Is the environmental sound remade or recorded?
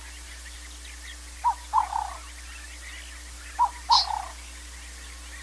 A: recorded